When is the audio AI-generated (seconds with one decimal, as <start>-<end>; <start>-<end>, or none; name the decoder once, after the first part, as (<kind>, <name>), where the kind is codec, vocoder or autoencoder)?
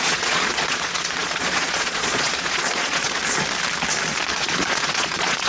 0.0-3.2 (vocoder, Vocos); 4.3-5.5